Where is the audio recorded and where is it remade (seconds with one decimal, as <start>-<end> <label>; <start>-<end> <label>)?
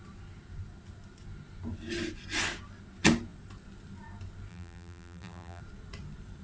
0.0-4.5 recorded; 4.5-5.6 remade; 5.6-6.4 recorded